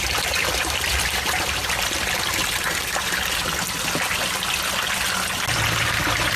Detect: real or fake real